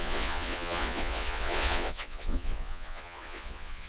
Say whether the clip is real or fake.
fake